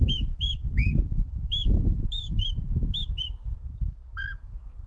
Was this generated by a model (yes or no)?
yes